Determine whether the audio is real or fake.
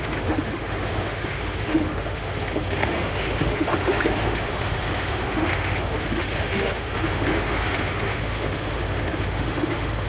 fake